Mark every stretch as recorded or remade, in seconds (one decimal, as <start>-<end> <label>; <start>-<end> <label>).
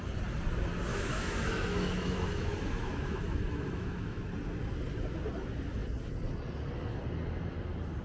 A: 0.0-0.9 recorded; 0.9-4.2 remade; 4.2-8.0 recorded